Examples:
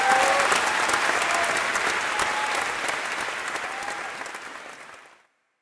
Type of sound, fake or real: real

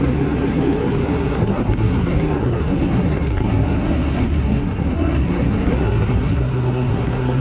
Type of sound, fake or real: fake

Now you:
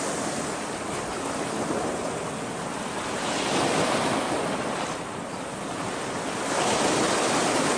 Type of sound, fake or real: real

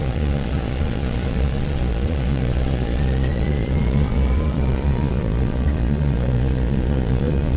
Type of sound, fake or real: fake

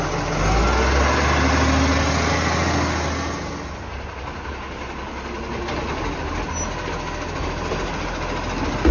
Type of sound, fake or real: real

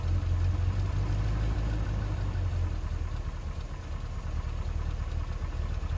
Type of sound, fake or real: real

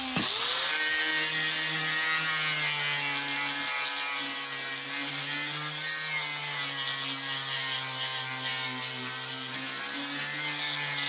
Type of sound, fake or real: real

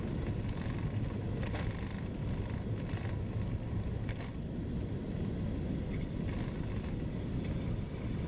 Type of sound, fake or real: real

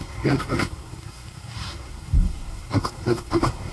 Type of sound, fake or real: fake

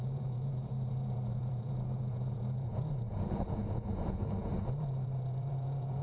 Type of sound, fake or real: fake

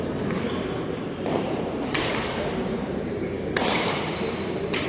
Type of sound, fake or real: fake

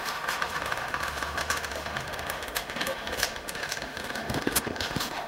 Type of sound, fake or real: fake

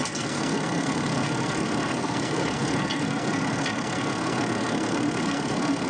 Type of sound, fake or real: fake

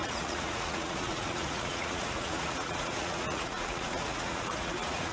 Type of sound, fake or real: fake